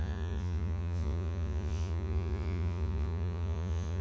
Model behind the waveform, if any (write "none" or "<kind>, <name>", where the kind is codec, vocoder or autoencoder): vocoder, Vocos